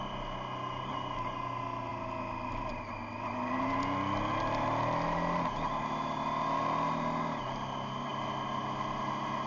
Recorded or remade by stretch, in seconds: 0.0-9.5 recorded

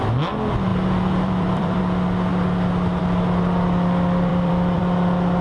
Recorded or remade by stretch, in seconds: 0.0-0.7 recorded; 0.7-1.8 remade; 1.8-4.3 recorded; 4.3-4.8 remade; 4.8-5.4 recorded

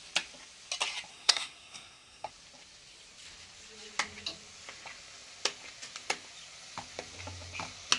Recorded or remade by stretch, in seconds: 0.0-1.1 recorded; 1.1-2.3 remade; 2.3-8.0 recorded

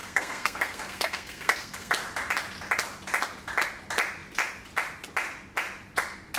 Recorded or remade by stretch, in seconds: 0.0-1.9 remade; 1.9-6.4 recorded

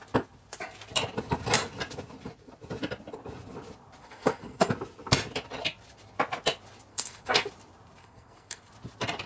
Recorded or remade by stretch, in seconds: 0.0-4.0 recorded; 4.0-4.7 remade; 4.7-6.9 recorded; 6.9-7.5 remade; 7.5-8.0 recorded; 8.0-8.7 remade; 8.7-9.3 recorded

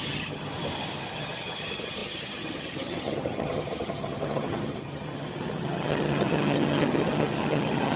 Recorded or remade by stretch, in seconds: 0.0-0.5 remade; 0.5-1.1 recorded; 1.1-8.0 remade